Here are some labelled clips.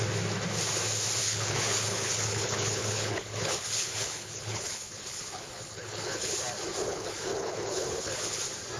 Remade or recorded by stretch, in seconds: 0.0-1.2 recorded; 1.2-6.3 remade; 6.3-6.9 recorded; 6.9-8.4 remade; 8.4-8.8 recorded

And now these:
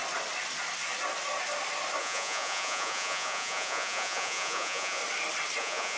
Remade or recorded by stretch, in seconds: 0.0-2.0 recorded; 2.0-5.0 remade; 5.0-5.6 recorded; 5.6-6.0 remade

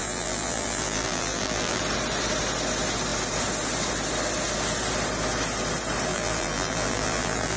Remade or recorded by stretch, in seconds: 0.0-1.8 remade; 1.8-6.1 recorded; 6.1-7.6 remade

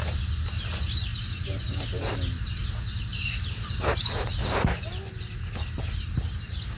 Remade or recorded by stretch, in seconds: 0.0-6.8 recorded

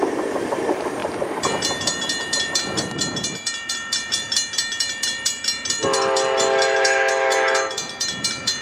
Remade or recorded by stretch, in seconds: 0.0-8.6 remade

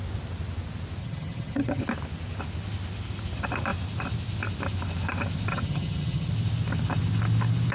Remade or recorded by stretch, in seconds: 0.0-1.0 recorded; 1.0-1.8 remade; 1.8-5.5 recorded; 5.5-6.3 remade; 6.3-7.7 recorded

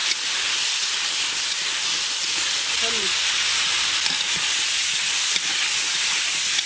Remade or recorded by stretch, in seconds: 0.0-6.7 recorded

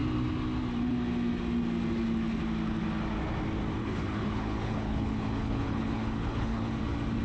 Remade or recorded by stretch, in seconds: 0.0-3.8 recorded; 3.8-6.8 remade; 6.8-7.2 recorded